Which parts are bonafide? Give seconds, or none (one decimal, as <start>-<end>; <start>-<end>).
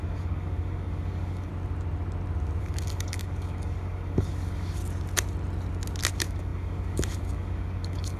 1.5-2.6; 4.8-6.1